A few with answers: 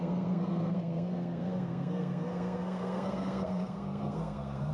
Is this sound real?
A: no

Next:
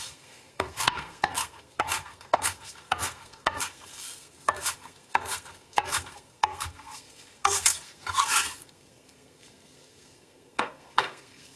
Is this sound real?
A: no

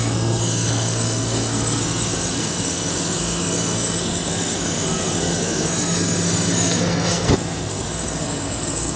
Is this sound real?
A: no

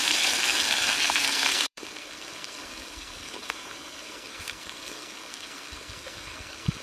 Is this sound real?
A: no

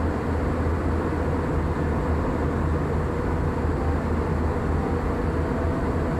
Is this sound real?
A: yes